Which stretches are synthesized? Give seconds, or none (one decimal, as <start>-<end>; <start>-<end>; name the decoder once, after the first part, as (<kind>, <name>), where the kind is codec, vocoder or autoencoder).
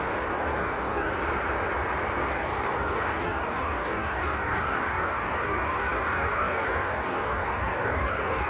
0.0-1.1 (codec, DAC); 2.3-8.5